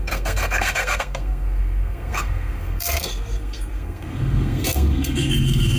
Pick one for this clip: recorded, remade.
remade